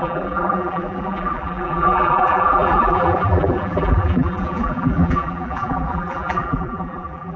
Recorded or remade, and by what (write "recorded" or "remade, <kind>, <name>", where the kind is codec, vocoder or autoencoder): remade, vocoder, BigVGAN v2